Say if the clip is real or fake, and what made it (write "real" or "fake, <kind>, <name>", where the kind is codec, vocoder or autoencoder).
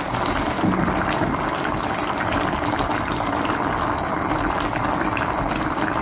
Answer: fake, vocoder, BigVGAN v2